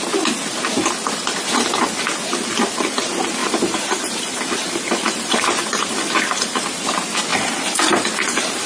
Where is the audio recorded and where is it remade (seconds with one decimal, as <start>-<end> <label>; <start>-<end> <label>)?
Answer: 0.0-3.4 recorded; 3.4-6.6 remade; 6.6-7.3 recorded; 7.3-8.7 remade